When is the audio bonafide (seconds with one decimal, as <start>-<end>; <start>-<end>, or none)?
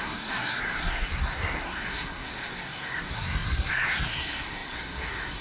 none